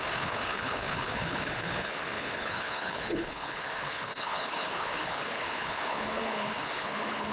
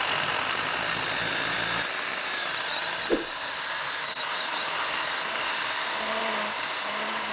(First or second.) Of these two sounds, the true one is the second